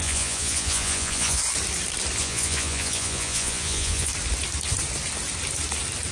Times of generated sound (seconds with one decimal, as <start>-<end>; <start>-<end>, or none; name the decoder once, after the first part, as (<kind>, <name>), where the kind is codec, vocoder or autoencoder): 0.0-1.4 (vocoder, Vocos); 2.2-4.1